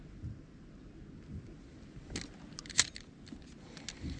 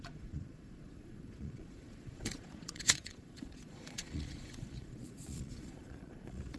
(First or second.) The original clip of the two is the first